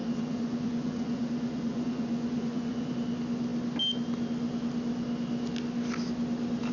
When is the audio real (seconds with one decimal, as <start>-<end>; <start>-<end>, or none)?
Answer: 2.9-6.7

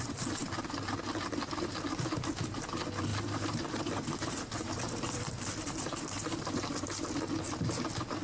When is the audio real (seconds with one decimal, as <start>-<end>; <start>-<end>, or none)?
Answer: 0.0-3.1; 6.8-8.2